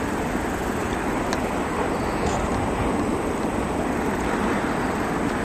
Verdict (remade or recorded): recorded